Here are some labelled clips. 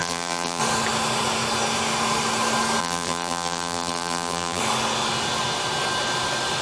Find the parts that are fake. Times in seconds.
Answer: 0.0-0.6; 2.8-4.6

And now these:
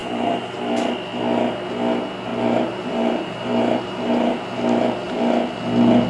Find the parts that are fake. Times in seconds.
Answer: 0.0-0.6; 2.3-5.2

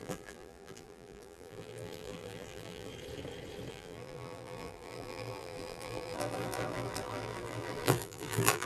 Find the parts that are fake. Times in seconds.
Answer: 0.0-2.9; 3.7-8.7

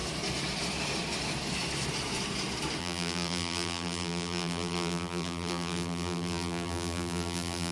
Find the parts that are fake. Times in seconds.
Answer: 2.8-7.7

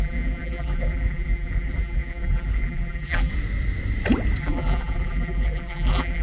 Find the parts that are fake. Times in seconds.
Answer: 0.0-3.3; 4.4-6.2

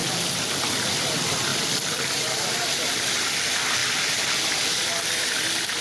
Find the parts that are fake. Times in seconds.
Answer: 0.9-1.5; 2.1-3.8; 4.5-5.8

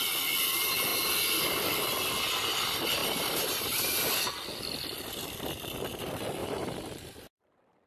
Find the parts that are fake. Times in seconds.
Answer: 3.0-4.2; 6.4-7.4